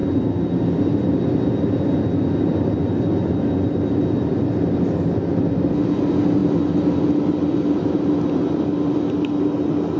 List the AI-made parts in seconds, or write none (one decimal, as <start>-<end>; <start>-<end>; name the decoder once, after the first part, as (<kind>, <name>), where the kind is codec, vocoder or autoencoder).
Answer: none